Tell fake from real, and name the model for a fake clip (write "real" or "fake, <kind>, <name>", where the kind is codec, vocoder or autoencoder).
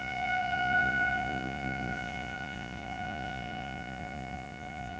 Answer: fake, vocoder, Vocos